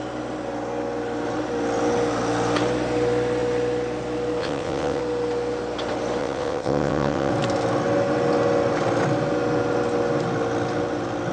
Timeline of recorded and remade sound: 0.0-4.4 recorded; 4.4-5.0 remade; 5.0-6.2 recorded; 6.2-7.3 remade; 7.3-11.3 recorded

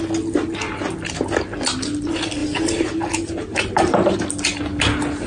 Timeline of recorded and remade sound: 0.0-2.4 recorded; 2.4-4.2 remade; 4.2-5.3 recorded

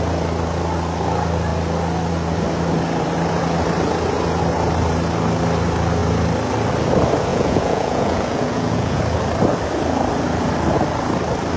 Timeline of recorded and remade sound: 0.0-7.3 recorded; 7.3-9.0 remade; 9.0-11.6 recorded

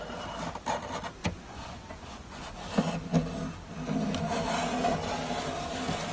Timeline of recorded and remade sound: 0.0-1.2 recorded; 1.2-2.5 remade; 2.5-6.1 recorded

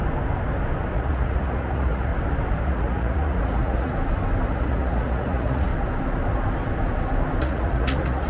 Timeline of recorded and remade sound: 0.0-0.9 recorded; 0.9-2.1 remade; 2.1-2.6 recorded; 2.6-3.9 remade; 3.9-4.5 recorded; 4.5-5.7 remade; 5.7-7.4 recorded; 7.4-8.3 remade

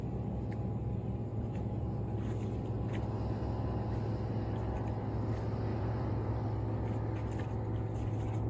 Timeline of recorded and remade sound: 0.0-1.3 recorded; 1.3-2.0 remade; 2.0-5.7 recorded; 5.7-6.3 remade; 6.3-8.5 recorded

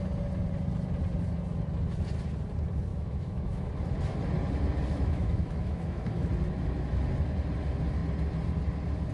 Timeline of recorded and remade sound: 0.0-2.9 recorded; 2.9-3.7 remade; 3.7-4.9 recorded; 4.9-6.3 remade; 6.3-9.1 recorded